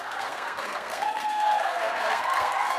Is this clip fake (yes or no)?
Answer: yes